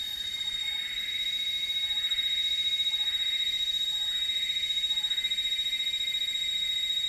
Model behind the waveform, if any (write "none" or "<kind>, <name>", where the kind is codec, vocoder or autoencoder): none